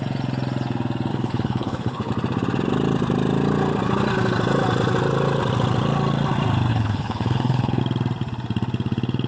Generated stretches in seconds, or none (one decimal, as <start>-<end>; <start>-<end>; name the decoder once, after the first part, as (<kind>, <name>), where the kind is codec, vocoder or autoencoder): 1.1-2.1 (codec, HILCodec); 6.7-7.8